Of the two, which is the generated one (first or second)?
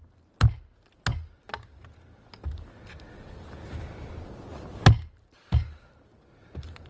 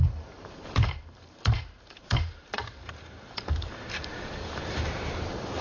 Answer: second